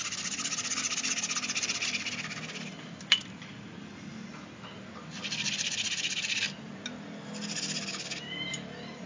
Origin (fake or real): real